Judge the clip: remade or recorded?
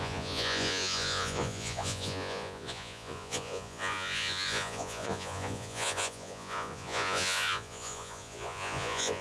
remade